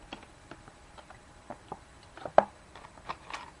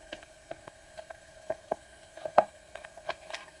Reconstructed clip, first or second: second